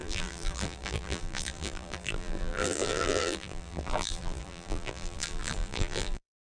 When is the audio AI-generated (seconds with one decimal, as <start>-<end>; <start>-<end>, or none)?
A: 0.0-6.4